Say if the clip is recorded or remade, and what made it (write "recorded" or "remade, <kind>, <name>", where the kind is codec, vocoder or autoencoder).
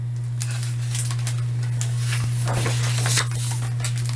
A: recorded